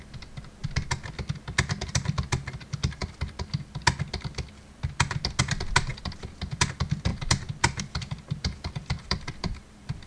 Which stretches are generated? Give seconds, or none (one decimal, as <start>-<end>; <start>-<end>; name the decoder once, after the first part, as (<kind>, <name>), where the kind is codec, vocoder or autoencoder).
0.0-0.6 (vocoder, BigVGAN v2); 1.8-3.0; 5.4-10.1